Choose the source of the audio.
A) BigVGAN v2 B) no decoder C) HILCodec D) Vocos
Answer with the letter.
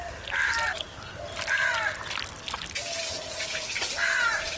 B